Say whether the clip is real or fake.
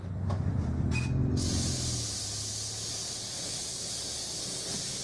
real